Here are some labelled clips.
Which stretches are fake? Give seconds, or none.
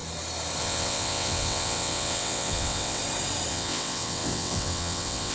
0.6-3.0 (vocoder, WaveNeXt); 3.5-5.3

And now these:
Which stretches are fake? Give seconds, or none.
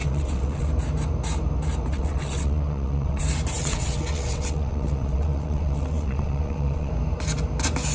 0.0-0.7 (vocoder, WaveNeXt); 1.9-3.2; 3.6-6.9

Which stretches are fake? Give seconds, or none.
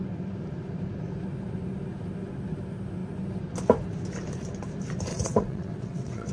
5.1-6.3 (vocoder, WaveNeXt)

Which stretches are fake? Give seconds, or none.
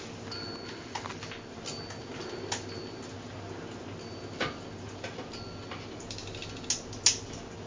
none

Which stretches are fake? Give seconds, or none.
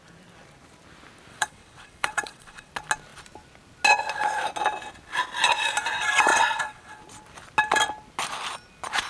1.3-2.7 (vocoder, WaveNeXt); 6.3-7.0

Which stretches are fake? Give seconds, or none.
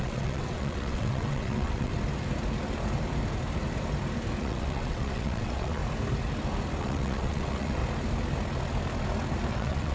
0.0-1.9 (vocoder, WaveNeXt); 4.4-5.8; 6.8-7.8; 9.5-9.9